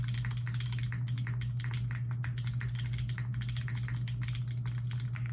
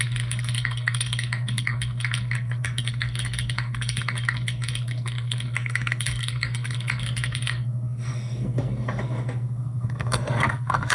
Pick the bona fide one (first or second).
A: first